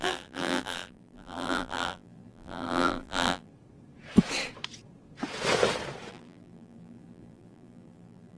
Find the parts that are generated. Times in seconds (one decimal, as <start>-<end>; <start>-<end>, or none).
0.0-3.5; 6.1-8.4